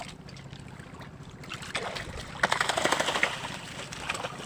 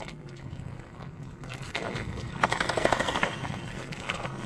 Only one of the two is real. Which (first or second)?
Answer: first